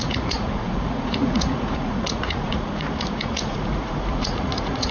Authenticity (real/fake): fake